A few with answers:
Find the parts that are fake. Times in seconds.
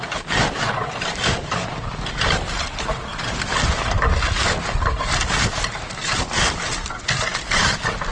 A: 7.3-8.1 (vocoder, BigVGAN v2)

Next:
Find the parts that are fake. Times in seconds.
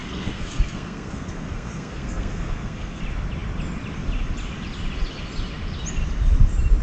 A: 0.0-3.0 (codec, SNAC)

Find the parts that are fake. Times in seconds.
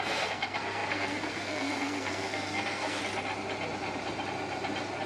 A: 0.0-3.0 (codec, SNAC)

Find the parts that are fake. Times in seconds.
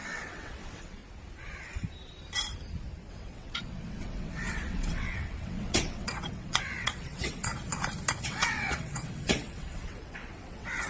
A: 0.0-1.0 (vocoder, WaveNeXt); 3.1-7.5; 8.2-10.9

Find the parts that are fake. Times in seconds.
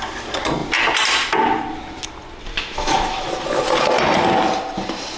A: 2.5-3.3 (autoencoder, DAC-VAE)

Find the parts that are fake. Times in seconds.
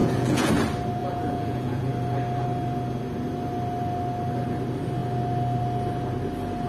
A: 0.0-0.5 (vocoder, Vocos); 1.0-1.9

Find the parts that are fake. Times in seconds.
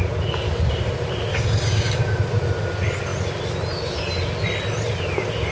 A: 1.3-2.0 (codec, DAC)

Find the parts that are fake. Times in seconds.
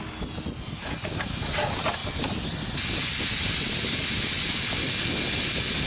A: none